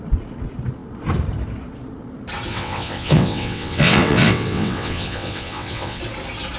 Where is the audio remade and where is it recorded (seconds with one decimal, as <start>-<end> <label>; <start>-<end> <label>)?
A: 0.0-2.5 recorded; 2.5-6.0 remade; 6.0-6.6 recorded